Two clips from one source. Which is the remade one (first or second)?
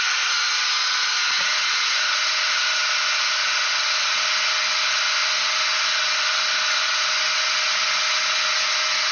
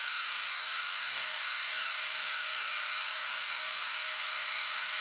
second